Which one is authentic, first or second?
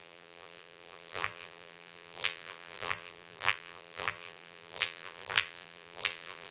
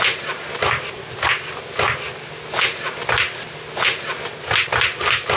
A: second